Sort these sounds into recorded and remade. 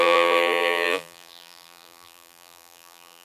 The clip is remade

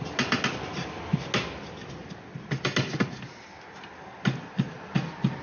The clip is recorded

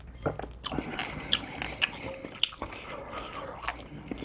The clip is recorded